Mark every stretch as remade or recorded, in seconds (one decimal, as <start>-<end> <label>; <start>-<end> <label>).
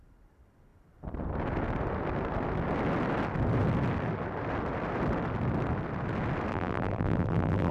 0.0-6.5 recorded; 6.5-7.7 remade